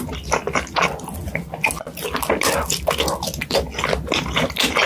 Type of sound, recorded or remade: recorded